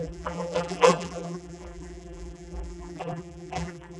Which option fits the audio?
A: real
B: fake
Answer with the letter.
B